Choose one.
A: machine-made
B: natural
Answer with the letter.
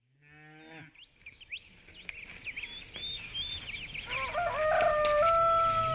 B